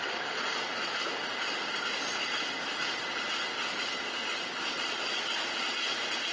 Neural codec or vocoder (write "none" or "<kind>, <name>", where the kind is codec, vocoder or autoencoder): none